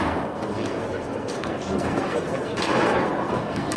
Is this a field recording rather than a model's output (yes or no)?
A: no